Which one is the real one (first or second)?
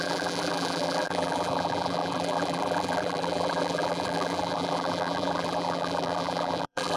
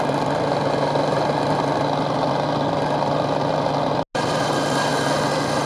second